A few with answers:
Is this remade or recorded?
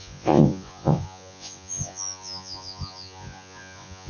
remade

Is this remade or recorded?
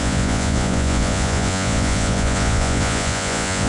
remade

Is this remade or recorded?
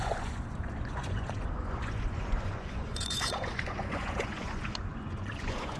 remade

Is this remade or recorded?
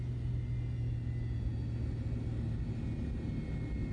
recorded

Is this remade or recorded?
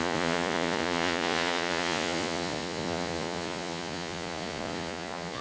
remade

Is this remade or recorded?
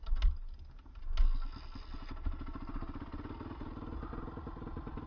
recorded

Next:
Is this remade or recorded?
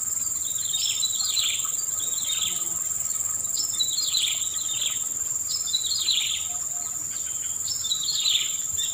recorded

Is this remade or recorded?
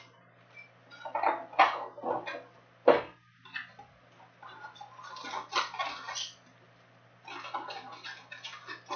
recorded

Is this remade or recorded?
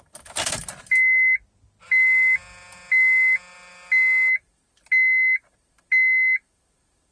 recorded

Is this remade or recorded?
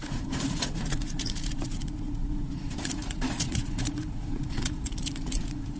remade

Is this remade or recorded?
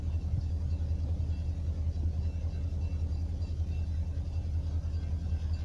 recorded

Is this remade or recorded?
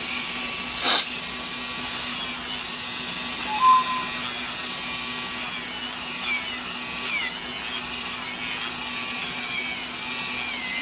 recorded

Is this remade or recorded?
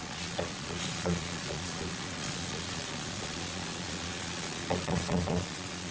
remade